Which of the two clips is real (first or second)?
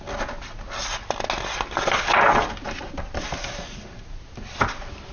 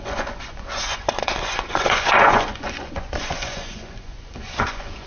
first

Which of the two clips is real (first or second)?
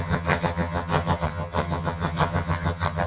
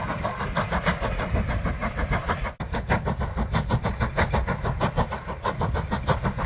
second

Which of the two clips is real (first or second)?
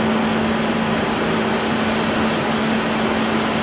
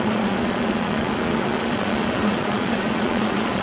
first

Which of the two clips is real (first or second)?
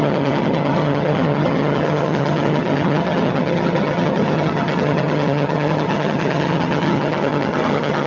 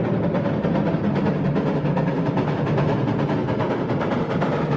second